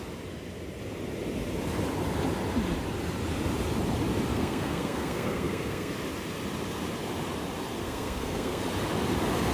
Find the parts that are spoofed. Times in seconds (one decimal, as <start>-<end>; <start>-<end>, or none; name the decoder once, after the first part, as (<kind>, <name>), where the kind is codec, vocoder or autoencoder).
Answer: 4.3-5.9 (codec, SNAC); 7.8-8.6